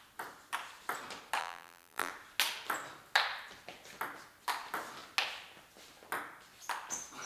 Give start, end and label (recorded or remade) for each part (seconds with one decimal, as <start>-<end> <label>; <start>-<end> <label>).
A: 0.0-1.4 recorded; 1.4-2.1 remade; 2.1-7.3 recorded